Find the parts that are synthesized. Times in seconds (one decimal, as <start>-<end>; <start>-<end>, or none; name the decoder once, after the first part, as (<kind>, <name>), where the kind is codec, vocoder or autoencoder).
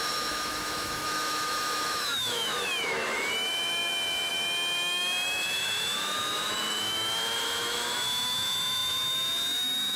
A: 0.0-10.0 (autoencoder, DAC-VAE)